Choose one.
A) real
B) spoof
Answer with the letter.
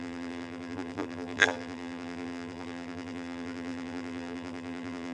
B